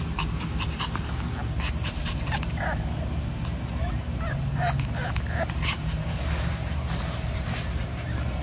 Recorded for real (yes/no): no